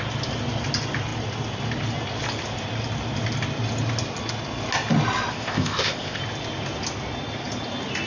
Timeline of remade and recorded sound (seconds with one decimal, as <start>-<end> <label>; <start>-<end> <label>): 0.0-5.3 recorded; 5.3-6.2 remade; 6.2-8.1 recorded